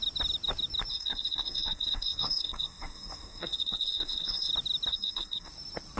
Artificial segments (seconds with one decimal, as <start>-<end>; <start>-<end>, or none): 0.9-4.5; 4.9-5.5